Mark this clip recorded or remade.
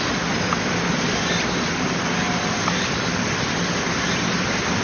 recorded